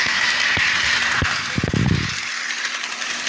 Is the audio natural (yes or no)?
yes